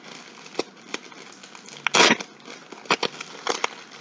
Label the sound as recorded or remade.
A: recorded